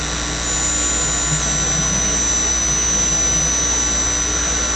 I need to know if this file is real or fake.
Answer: real